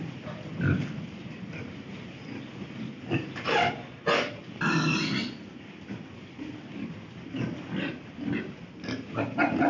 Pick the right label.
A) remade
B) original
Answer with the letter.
B